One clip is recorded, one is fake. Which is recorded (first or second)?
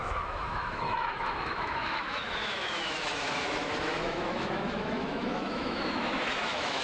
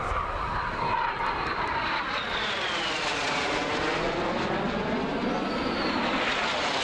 second